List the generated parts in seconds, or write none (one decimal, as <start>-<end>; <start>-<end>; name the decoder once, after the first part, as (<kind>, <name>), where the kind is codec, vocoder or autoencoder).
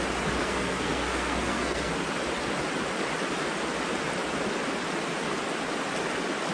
0.4-1.9 (codec, SNAC)